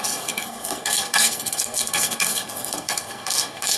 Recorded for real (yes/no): no